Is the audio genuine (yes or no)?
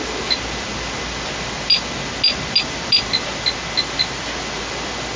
yes